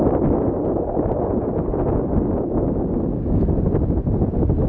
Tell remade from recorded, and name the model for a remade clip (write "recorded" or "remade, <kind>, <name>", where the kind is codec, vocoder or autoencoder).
recorded